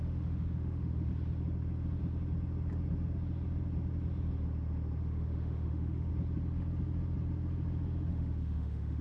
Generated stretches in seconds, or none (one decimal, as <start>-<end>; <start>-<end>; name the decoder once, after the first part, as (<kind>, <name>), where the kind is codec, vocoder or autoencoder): 0.0-1.1 (autoencoder, DAC-VAE); 5.0-6.1; 8.1-9.0